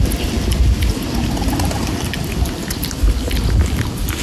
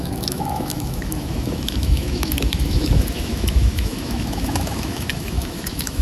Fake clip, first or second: second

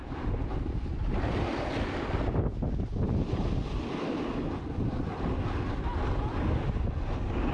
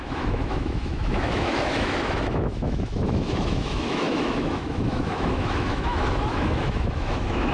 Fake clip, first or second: second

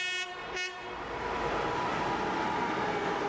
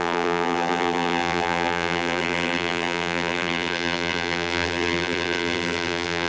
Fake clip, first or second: second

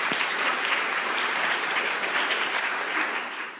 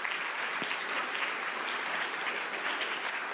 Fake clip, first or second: first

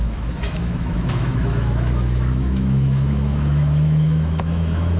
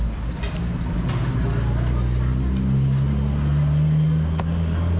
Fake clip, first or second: first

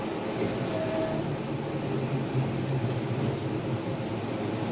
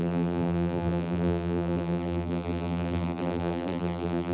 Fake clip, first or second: second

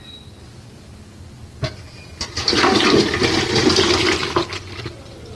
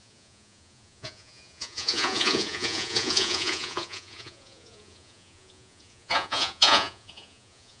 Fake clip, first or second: second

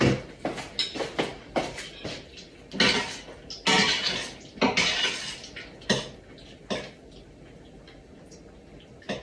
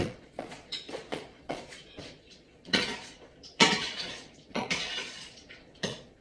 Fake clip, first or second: second